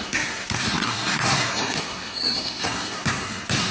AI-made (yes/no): yes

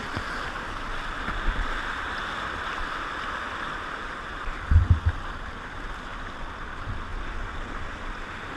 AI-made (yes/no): no